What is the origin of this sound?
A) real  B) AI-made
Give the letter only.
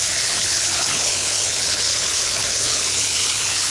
B